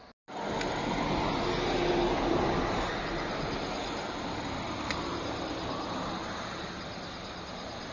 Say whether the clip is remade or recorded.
recorded